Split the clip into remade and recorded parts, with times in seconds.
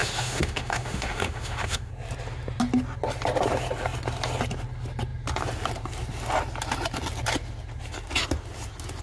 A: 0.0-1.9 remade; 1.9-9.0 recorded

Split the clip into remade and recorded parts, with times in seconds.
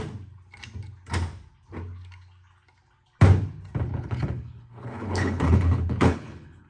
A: 0.0-3.9 recorded; 3.9-6.7 remade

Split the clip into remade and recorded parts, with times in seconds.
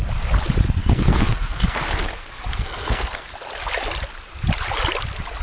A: 0.0-0.8 recorded; 0.8-3.3 remade; 3.3-5.4 recorded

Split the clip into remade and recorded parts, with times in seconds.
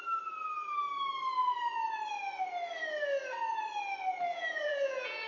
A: 0.0-4.3 recorded; 4.3-5.3 remade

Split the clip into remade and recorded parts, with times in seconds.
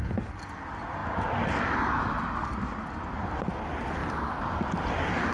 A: 0.0-5.3 recorded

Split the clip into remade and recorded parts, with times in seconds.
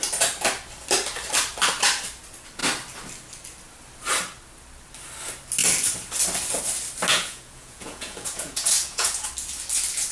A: 0.0-7.1 recorded; 7.1-9.3 remade; 9.3-10.1 recorded